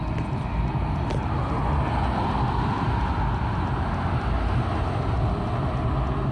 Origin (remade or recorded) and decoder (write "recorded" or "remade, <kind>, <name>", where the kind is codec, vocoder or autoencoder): recorded